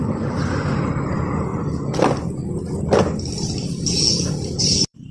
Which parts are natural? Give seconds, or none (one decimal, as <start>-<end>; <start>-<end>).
1.5-4.6